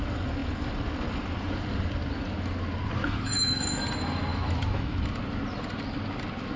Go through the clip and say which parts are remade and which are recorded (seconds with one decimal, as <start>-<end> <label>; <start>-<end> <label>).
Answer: 0.0-3.0 recorded; 3.0-3.8 remade; 3.8-4.3 recorded; 4.3-5.0 remade; 5.0-6.6 recorded